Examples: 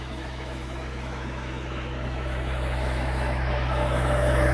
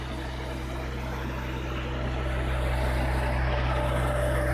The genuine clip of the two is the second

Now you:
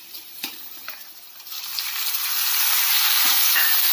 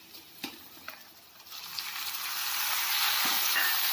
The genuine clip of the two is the second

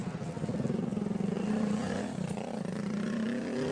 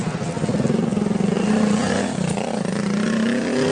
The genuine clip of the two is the second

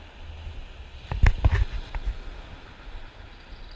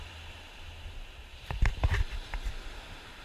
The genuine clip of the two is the first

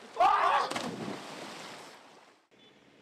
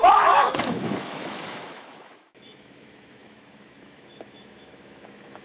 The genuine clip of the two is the first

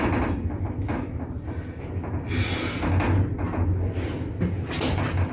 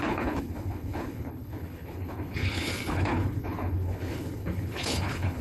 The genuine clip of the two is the first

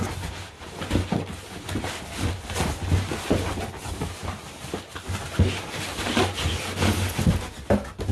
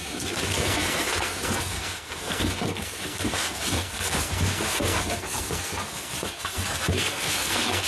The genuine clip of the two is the first